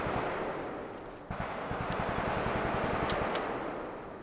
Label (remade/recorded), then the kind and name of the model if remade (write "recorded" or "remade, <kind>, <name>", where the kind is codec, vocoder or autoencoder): recorded